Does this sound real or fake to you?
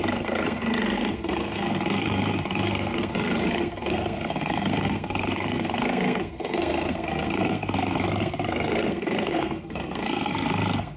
fake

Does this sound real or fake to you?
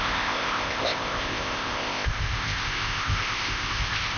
fake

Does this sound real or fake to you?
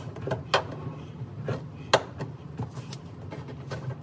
real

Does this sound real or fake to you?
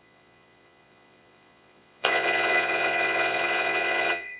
fake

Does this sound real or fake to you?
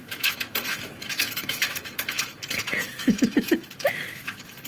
fake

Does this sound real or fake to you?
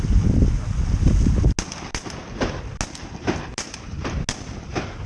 real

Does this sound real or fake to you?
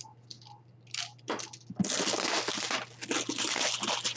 real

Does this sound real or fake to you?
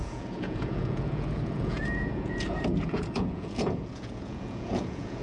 fake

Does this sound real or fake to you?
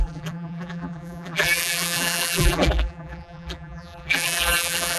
fake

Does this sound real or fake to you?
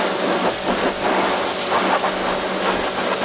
real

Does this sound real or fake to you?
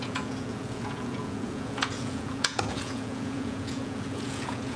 fake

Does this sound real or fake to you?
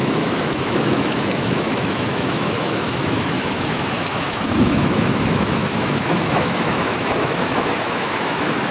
fake